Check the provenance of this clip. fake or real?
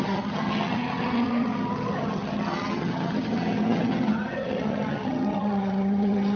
fake